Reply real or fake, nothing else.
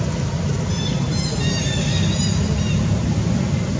real